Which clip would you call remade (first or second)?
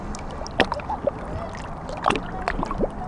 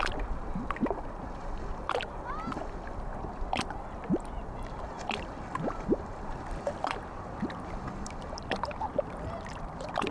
second